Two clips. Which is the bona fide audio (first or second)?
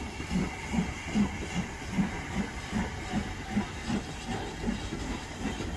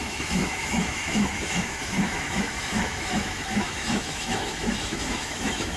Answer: first